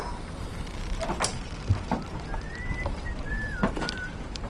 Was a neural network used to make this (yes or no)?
yes